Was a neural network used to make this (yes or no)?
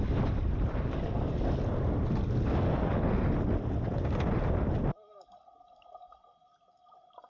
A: no